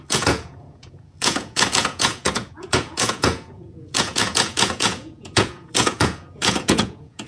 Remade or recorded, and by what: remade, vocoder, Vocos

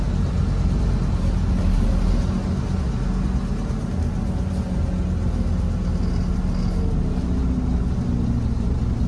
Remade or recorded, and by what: recorded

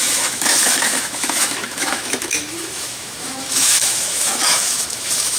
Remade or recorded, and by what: remade, autoencoder, DAC-VAE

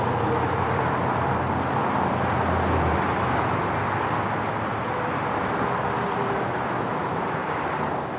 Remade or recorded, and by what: recorded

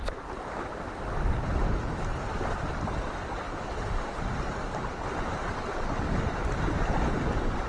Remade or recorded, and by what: recorded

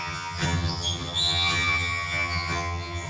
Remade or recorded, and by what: remade, vocoder, HiFi-GAN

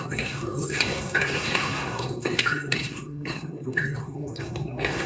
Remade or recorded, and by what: remade, codec, SNAC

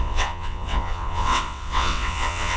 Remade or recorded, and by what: remade, vocoder, WaveNeXt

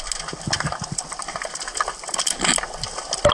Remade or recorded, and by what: recorded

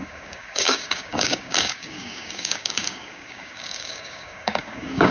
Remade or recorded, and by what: remade, codec, DAC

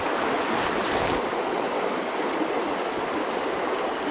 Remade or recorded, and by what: recorded